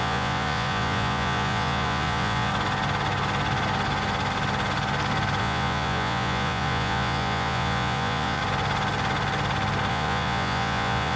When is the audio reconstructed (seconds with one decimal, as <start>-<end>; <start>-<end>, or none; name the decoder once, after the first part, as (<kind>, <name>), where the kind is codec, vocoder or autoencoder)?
0.0-2.5 (vocoder, Vocos); 5.4-8.4; 9.9-11.2